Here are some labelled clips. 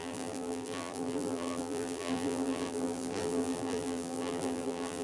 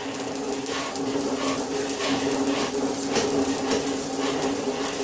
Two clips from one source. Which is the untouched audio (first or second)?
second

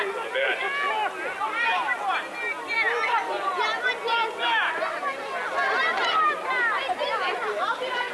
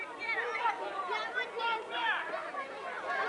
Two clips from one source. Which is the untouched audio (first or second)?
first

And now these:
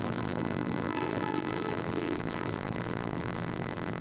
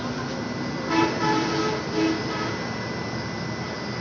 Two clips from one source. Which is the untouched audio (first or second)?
second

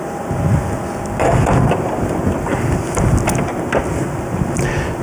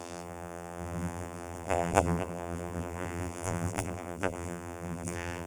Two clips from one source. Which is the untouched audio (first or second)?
first